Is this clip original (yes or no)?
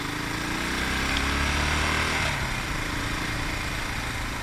yes